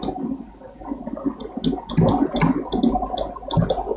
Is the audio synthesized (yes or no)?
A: no